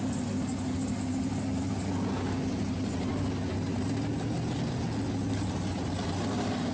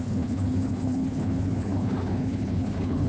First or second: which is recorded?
first